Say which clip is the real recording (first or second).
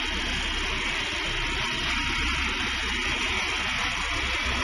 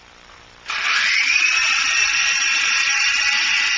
first